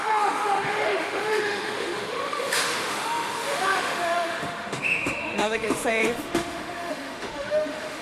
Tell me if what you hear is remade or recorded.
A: remade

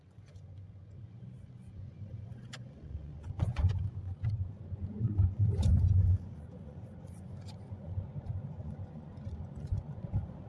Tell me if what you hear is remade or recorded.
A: remade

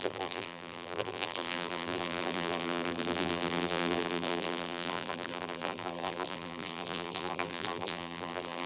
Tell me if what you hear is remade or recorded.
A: remade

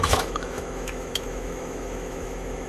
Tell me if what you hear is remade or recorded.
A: remade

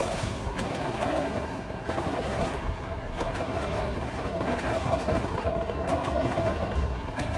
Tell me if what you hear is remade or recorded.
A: remade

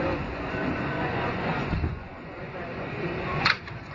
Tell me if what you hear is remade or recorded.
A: remade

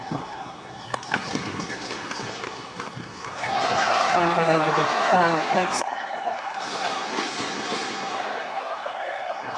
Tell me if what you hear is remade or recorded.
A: remade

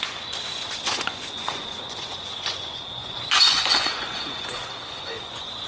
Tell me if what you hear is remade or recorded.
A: remade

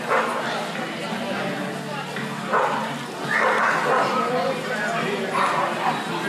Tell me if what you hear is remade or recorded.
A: recorded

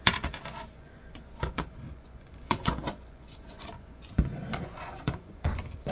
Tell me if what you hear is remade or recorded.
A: remade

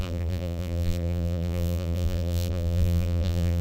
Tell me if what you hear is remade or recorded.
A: remade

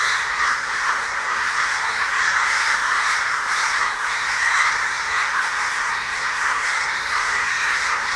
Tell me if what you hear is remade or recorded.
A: remade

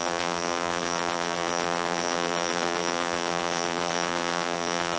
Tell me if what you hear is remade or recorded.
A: remade